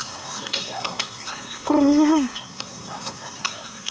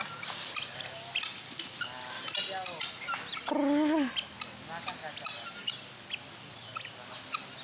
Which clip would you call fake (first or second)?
first